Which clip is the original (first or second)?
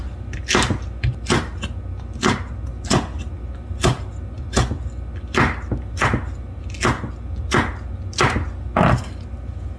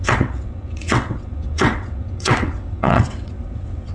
first